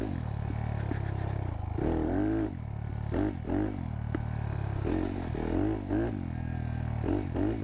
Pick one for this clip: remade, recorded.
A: recorded